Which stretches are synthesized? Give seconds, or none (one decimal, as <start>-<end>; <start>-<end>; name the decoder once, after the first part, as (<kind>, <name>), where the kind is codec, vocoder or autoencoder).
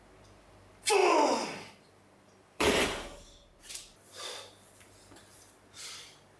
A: 1.0-2.9 (vocoder, BigVGAN v2)